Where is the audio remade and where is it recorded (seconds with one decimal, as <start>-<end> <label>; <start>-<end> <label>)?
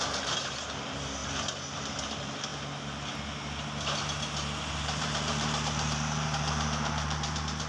0.0-2.5 remade; 2.5-4.7 recorded; 4.7-7.7 remade